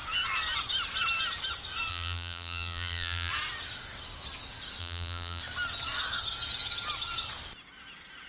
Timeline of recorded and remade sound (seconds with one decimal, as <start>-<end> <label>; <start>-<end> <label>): 0.0-1.9 recorded; 1.9-3.3 remade; 3.3-4.8 recorded; 4.8-5.4 remade; 5.4-8.3 recorded